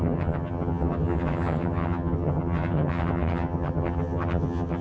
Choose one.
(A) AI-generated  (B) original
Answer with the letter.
A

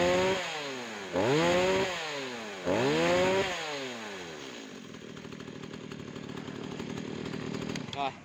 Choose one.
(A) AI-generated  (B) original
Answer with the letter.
B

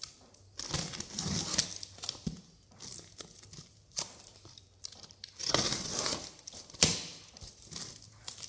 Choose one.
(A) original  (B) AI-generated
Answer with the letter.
A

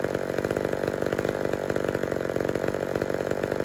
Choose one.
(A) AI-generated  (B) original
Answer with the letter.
B